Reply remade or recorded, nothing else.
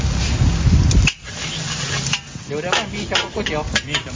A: recorded